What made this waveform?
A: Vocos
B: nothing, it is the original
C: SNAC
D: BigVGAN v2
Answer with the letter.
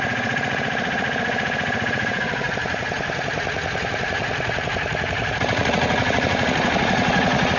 A